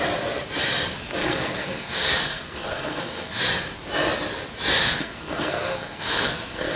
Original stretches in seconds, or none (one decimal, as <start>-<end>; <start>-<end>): 0.0-1.2; 3.4-4.8